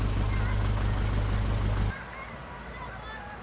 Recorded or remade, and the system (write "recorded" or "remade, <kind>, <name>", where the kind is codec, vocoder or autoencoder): recorded